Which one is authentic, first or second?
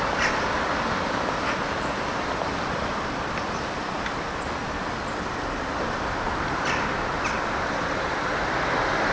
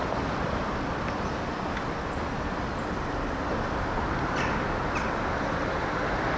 second